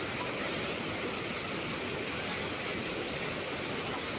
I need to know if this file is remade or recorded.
recorded